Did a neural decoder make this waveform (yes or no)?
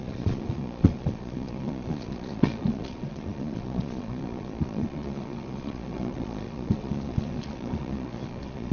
yes